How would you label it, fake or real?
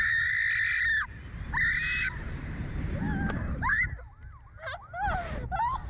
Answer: real